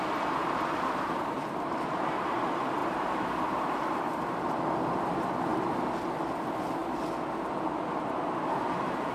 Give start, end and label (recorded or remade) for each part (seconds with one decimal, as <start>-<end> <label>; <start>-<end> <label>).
0.0-0.4 recorded; 0.4-2.4 remade; 2.4-2.8 recorded; 2.8-4.8 remade; 4.8-9.1 recorded